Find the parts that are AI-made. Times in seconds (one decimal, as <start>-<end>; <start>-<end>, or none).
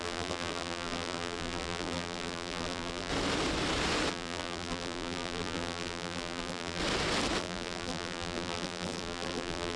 0.0-3.1; 4.1-6.8; 7.4-9.8